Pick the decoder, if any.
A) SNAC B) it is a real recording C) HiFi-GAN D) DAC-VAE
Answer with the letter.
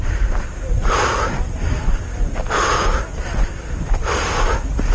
B